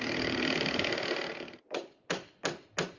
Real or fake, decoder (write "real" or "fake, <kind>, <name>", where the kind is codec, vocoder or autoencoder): real